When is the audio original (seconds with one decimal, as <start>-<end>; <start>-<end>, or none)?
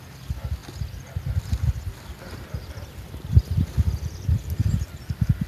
0.0-5.5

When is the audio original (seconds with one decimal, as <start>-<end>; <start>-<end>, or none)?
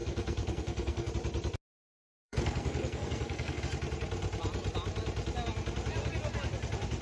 1.1-2.1; 3.6-7.0